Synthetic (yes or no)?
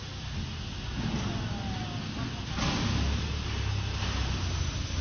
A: no